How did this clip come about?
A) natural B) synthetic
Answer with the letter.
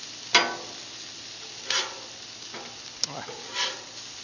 A